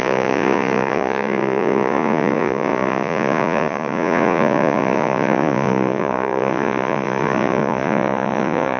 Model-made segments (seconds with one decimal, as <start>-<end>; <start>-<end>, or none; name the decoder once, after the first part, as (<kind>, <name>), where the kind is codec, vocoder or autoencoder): 0.0-8.8 (vocoder, Vocos)